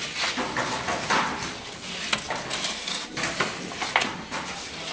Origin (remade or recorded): recorded